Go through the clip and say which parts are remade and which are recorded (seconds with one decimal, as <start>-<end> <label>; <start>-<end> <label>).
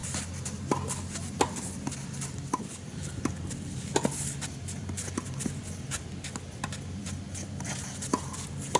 0.0-8.8 recorded